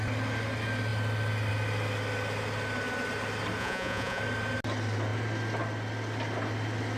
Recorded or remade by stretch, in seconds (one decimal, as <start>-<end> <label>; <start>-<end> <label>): 0.0-3.6 recorded; 3.6-4.2 remade; 4.2-7.0 recorded